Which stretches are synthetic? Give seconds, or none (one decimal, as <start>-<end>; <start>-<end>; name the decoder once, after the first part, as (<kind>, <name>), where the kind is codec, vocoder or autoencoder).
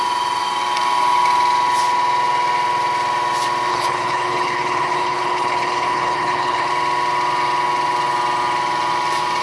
3.7-6.7 (codec, HILCodec)